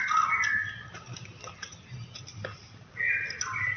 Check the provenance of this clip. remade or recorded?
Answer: recorded